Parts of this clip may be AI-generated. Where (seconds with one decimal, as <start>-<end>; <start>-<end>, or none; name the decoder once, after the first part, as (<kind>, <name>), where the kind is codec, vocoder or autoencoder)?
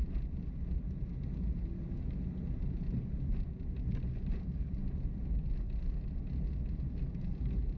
none